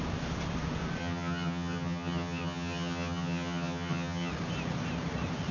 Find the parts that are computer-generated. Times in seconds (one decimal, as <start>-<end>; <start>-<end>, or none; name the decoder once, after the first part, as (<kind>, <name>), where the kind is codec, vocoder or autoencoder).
1.0-4.3 (vocoder, HiFi-GAN)